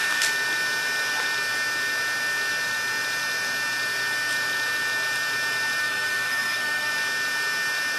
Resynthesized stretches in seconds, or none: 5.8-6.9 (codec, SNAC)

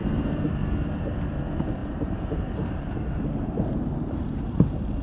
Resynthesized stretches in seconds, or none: 0.0-0.5 (vocoder, BigVGAN v2); 1.8-5.0

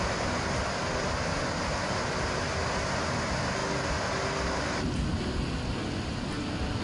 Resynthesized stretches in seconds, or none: none

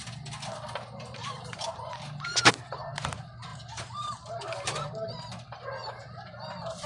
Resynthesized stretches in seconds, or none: 1.2-1.9 (vocoder, BigVGAN v2); 3.5-4.4; 5.8-6.9

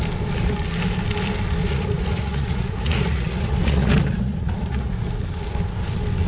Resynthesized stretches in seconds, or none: 1.6-5.1 (vocoder, Vocos)